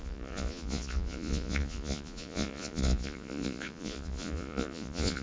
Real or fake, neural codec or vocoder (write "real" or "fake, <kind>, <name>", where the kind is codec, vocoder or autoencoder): fake, vocoder, Vocos